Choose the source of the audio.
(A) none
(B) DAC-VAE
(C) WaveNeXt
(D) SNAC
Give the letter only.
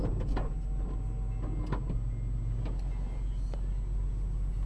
A